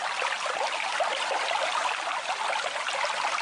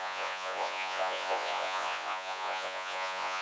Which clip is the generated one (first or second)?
second